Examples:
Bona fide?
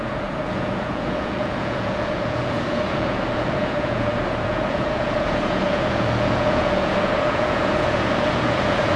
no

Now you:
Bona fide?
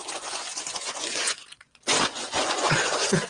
no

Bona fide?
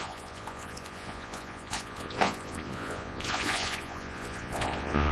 no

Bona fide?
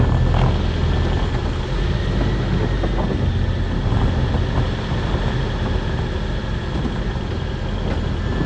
yes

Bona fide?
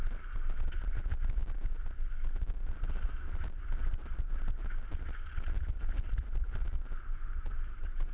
yes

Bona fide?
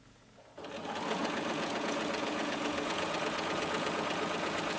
no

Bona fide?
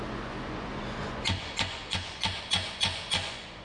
no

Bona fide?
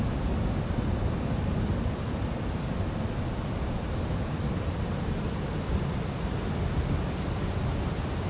yes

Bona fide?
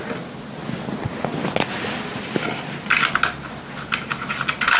yes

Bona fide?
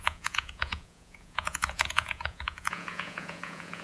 no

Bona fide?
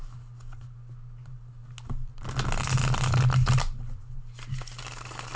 yes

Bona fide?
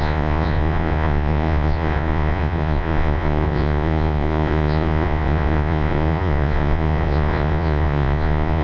no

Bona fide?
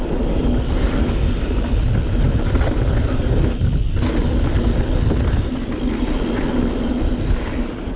yes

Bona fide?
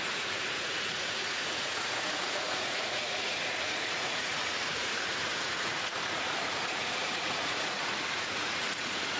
no